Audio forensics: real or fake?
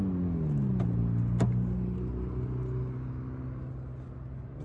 real